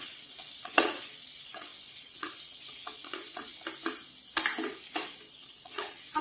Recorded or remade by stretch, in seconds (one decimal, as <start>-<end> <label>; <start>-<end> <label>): 0.0-3.5 remade; 3.5-5.3 recorded; 5.3-6.2 remade